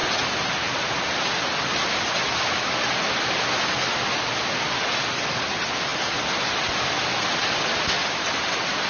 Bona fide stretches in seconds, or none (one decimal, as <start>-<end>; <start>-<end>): 0.0-8.9